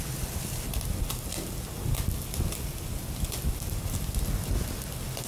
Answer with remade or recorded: recorded